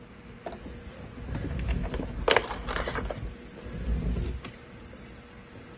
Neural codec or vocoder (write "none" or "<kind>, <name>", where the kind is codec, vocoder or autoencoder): none